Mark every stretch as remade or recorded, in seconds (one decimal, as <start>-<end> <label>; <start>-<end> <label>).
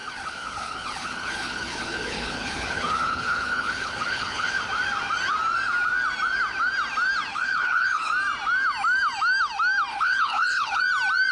0.0-4.6 remade; 4.6-7.3 recorded; 7.3-8.1 remade; 8.1-9.9 recorded; 9.9-10.8 remade; 10.8-11.3 recorded